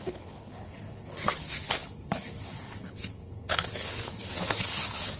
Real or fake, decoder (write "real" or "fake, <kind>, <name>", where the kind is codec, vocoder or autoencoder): fake, codec, HILCodec